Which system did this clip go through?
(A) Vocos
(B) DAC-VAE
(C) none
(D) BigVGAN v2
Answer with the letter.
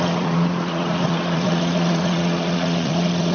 A